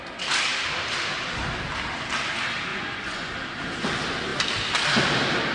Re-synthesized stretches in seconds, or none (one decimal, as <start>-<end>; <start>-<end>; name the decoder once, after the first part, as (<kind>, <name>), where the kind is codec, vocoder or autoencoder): 2.7-3.3 (vocoder, Vocos)